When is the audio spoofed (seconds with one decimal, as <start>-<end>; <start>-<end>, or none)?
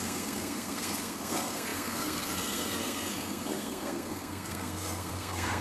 0.0-5.6